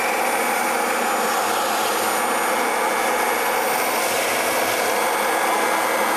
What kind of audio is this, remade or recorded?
recorded